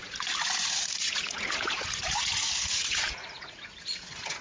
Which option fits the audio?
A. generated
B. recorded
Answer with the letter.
A